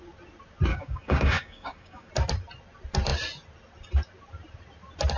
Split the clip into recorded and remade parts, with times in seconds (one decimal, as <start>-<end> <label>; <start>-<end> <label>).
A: 0.0-0.7 recorded; 0.7-2.1 remade; 2.1-5.2 recorded